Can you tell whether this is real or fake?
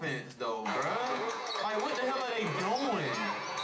fake